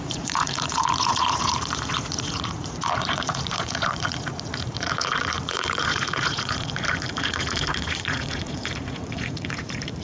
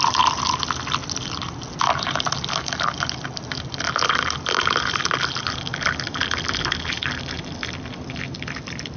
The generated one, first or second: first